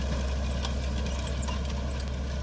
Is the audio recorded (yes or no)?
yes